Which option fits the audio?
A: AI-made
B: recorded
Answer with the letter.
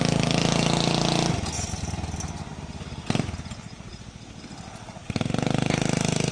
B